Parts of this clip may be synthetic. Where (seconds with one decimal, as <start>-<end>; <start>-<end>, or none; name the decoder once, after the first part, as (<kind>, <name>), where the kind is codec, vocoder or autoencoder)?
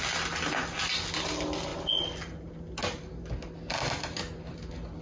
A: none